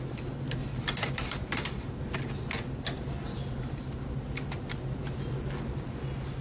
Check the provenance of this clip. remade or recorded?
recorded